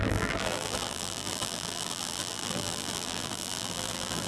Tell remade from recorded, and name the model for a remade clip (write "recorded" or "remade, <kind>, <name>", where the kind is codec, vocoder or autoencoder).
remade, vocoder, BigVGAN v2